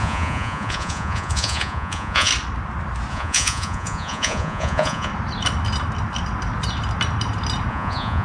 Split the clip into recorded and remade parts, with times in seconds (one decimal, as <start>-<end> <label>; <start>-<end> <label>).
0.0-2.3 remade; 2.3-3.1 recorded; 3.1-5.1 remade; 5.1-7.7 recorded; 7.7-8.2 remade